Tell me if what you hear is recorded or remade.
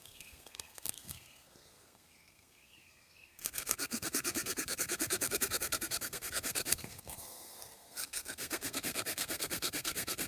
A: remade